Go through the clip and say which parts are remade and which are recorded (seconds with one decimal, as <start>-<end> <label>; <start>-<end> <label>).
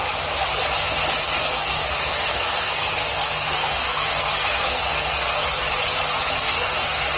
0.0-1.4 recorded; 1.4-5.3 remade; 5.3-6.4 recorded; 6.4-7.2 remade